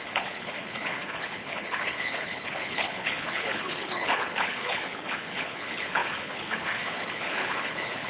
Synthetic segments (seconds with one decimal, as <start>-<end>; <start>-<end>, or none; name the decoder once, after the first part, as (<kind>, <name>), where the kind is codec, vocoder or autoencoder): 0.0-8.1 (codec, HILCodec)